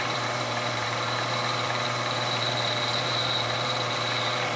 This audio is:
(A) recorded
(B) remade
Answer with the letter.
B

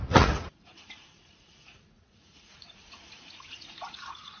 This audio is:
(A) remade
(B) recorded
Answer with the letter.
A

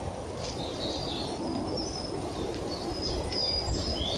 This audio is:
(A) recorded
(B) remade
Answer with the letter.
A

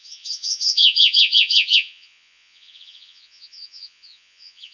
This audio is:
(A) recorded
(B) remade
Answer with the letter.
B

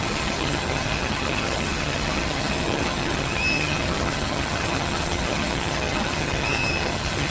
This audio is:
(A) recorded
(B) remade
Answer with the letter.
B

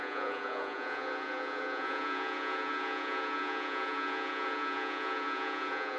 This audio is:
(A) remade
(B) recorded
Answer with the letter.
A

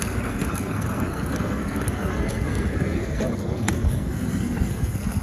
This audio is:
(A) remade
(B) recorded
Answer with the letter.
A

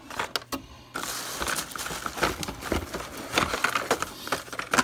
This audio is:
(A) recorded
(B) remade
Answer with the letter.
A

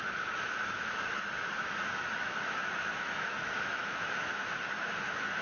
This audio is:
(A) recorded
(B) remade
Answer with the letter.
B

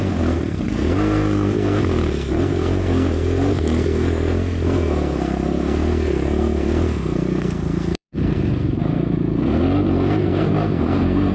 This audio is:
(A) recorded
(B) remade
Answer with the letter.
B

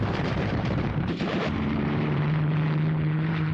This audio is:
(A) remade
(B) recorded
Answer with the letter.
A